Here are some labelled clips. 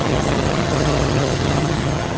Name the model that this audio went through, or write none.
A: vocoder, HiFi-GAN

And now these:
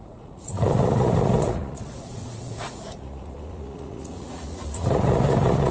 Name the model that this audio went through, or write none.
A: vocoder, Vocos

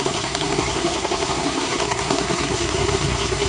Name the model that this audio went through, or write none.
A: codec, SNAC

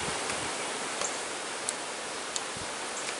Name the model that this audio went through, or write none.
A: none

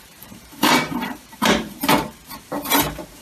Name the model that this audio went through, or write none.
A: vocoder, BigVGAN v2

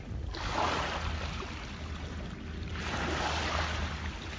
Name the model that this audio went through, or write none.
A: none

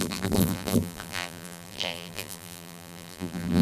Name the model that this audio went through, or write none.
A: vocoder, BigVGAN v2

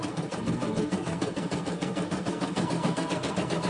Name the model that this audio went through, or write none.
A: codec, SNAC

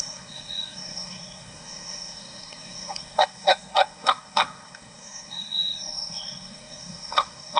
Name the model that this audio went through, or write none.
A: codec, SNAC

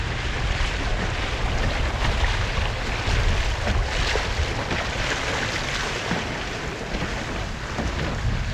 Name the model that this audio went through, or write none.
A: none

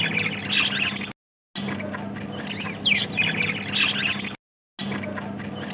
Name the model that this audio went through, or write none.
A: none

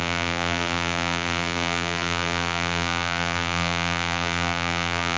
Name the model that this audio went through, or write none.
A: vocoder, BigVGAN v2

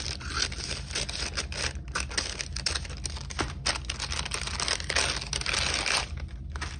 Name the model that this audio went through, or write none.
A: none